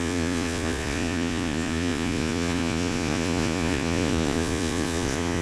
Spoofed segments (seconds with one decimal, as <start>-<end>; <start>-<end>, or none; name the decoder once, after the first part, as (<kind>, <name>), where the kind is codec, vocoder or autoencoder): 0.0-5.4 (vocoder, Vocos)